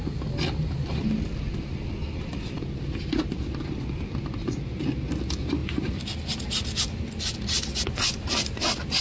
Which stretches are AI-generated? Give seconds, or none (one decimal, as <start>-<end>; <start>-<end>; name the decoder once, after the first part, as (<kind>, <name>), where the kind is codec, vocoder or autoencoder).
none